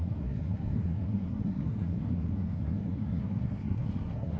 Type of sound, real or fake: fake